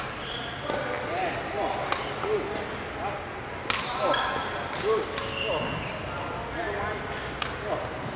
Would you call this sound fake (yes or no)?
no